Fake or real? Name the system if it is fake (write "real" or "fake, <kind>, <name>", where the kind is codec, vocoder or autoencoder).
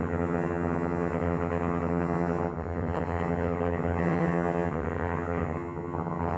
fake, vocoder, HiFi-GAN